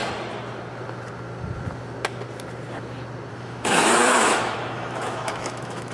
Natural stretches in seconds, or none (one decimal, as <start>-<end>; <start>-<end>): 0.0-3.3

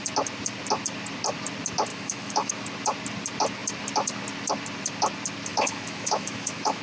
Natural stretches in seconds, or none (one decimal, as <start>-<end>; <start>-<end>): 0.0-1.9; 2.5-5.5

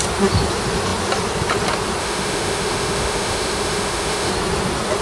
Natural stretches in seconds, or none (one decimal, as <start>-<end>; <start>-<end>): 0.0-2.0; 4.3-5.0